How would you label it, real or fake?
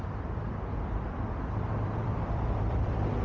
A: fake